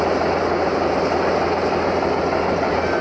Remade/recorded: recorded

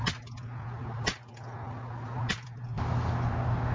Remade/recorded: recorded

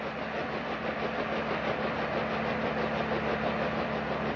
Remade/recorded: recorded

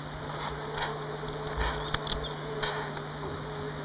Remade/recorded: recorded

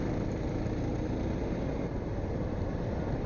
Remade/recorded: recorded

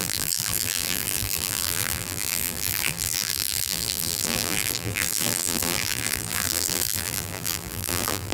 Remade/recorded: remade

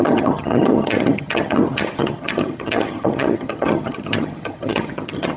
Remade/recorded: remade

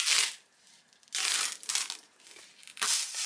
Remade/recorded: recorded